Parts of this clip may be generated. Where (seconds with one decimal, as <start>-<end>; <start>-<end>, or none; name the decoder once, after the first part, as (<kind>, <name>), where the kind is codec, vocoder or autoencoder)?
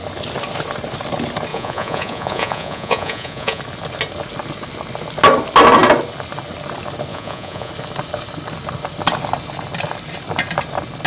1.5-3.6 (vocoder, Vocos); 7.1-7.7